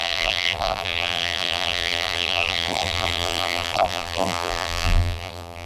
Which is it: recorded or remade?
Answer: remade